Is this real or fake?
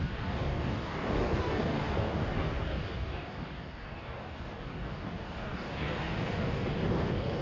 fake